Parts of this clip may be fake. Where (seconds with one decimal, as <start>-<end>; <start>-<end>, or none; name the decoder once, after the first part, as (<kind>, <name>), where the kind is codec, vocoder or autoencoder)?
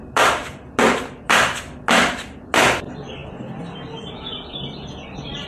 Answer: none